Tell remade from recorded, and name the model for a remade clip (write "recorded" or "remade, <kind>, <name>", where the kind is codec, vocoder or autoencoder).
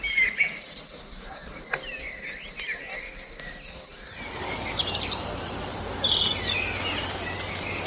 recorded